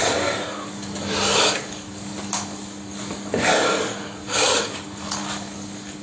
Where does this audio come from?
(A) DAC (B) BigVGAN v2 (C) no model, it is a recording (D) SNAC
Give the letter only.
A